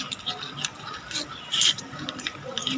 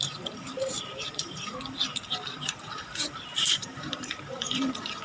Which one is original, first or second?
first